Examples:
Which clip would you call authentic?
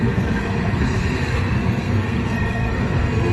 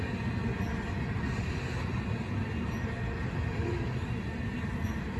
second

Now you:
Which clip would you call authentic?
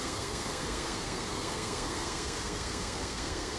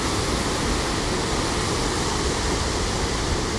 second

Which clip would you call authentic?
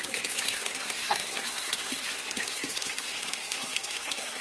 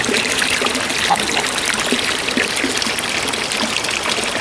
second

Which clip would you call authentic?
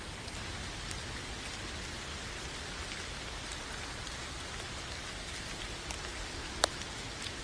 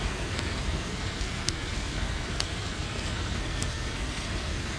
first